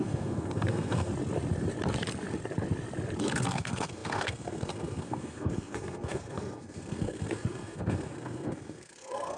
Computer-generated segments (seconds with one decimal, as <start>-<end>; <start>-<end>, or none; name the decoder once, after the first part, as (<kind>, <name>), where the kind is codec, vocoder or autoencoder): 0.0-1.1 (codec, SNAC); 3.2-9.4